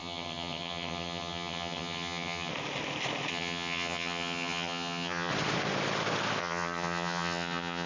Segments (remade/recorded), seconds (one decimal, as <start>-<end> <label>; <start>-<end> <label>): 0.0-2.5 remade; 2.5-3.3 recorded; 3.3-5.3 remade; 5.3-6.4 recorded; 6.4-7.9 remade